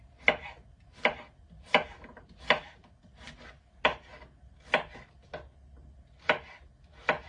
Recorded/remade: recorded